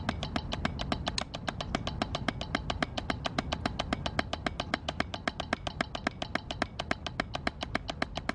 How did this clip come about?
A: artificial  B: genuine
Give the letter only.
B